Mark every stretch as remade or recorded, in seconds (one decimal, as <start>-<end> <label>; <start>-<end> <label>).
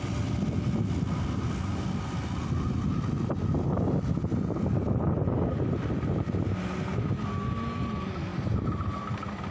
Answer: 0.0-8.3 recorded; 8.3-9.0 remade; 9.0-9.5 recorded